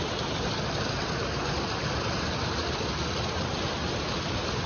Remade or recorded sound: recorded